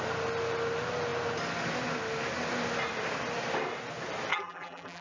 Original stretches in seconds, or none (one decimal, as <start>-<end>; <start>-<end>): 0.0-4.3